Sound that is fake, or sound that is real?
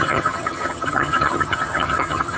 fake